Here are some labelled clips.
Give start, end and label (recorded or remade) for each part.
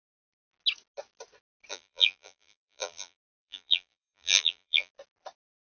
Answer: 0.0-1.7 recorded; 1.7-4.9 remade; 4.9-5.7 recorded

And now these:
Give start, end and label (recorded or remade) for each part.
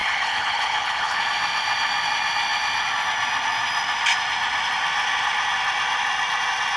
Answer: 0.0-1.2 remade; 1.2-6.8 recorded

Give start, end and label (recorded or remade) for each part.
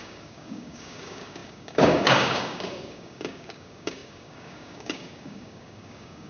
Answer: 0.0-6.3 remade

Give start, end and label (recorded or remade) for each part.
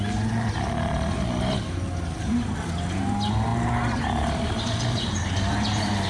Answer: 0.0-3.5 recorded; 3.5-6.1 remade